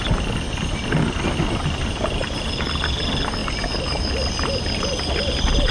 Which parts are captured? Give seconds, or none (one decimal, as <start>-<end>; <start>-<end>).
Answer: 0.0-5.7